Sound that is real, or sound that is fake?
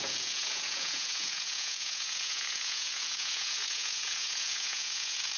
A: fake